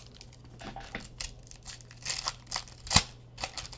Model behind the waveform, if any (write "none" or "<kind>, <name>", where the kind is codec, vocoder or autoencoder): none